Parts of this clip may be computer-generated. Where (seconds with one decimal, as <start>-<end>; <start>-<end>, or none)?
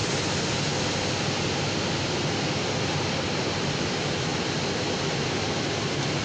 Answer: none